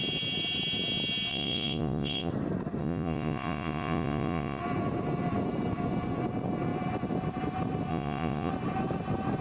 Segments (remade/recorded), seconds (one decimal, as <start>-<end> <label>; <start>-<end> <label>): 0.0-1.3 recorded; 1.3-2.3 remade; 2.3-2.8 recorded; 2.8-4.6 remade; 4.6-7.9 recorded; 7.9-8.5 remade; 8.5-9.4 recorded